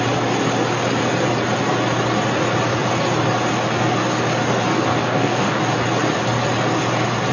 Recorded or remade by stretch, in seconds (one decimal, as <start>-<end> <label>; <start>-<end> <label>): 0.0-4.9 recorded; 4.9-5.6 remade; 5.6-7.3 recorded